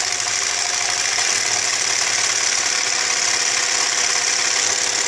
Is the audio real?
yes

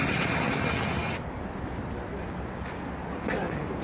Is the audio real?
yes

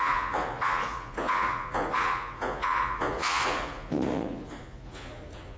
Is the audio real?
no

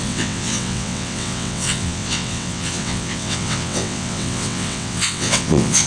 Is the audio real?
no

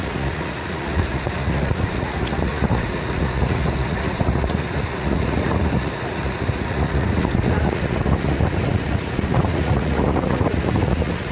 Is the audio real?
no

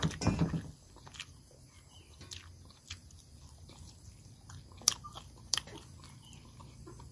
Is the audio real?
yes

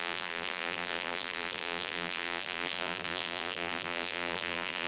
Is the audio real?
no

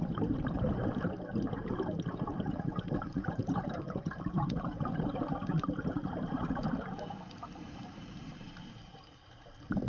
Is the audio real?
no